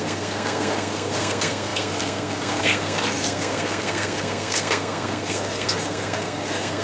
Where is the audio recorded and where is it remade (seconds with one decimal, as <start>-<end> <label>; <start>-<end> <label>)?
0.0-6.8 remade